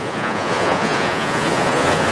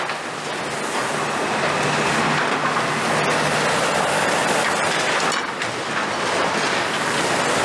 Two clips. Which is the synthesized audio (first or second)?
first